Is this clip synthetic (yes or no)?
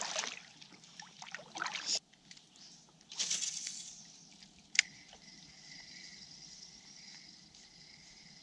no